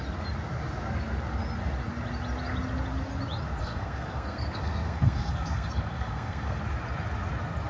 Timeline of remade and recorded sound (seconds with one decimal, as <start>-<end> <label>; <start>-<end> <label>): 0.0-3.6 recorded; 3.6-6.6 remade; 6.6-7.7 recorded